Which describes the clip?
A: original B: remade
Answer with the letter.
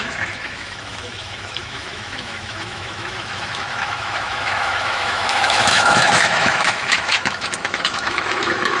B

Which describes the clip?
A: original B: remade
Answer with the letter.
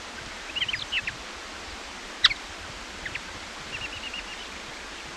A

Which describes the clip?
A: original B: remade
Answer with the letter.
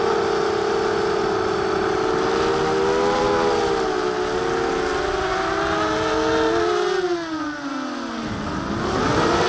A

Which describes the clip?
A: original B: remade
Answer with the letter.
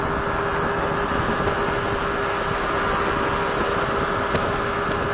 A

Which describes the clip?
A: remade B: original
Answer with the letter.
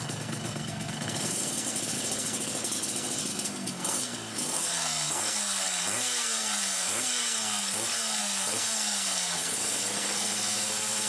A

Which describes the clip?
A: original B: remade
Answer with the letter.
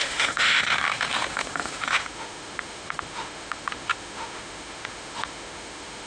B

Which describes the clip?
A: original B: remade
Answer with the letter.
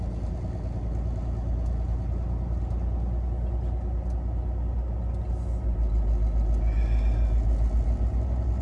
A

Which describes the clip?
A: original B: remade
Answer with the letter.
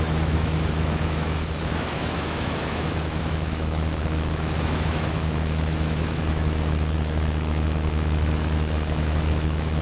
B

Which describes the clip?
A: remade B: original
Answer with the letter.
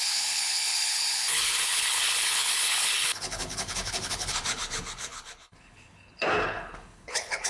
A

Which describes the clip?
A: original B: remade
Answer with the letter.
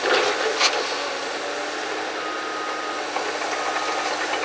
A